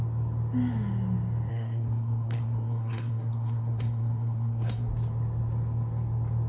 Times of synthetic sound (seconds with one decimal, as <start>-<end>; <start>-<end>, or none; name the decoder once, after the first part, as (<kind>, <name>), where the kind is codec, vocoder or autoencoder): 1.5-4.9 (codec, SNAC)